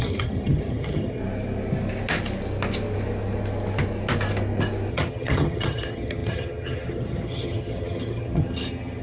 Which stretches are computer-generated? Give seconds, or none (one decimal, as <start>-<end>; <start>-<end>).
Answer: 0.0-1.2; 4.9-9.0

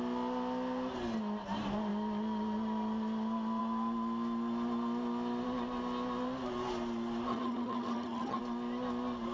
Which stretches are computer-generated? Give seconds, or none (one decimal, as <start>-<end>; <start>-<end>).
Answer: 7.3-8.4

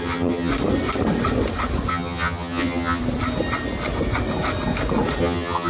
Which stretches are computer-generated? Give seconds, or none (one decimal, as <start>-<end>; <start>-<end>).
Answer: 0.0-0.5; 1.9-3.0; 5.2-5.7

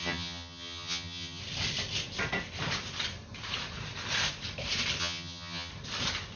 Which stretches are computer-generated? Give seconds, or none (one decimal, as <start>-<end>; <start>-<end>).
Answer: 0.0-1.4; 5.0-5.7

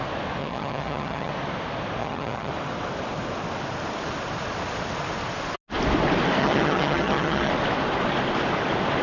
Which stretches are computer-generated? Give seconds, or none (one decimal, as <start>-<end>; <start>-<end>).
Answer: 0.4-1.3; 2.0-2.5; 6.4-7.5

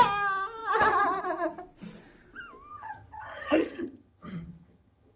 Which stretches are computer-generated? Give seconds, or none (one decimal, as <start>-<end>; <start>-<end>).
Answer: 2.7-5.2

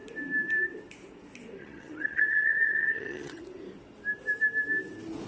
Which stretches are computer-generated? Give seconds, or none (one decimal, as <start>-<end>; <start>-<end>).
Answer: 1.6-3.4

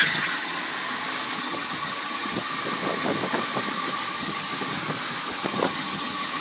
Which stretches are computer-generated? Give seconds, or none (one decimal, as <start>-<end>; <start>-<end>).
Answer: 0.0-0.6; 1.4-2.5; 4.1-4.5; 5.2-6.4